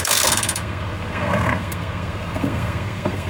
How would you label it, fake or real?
fake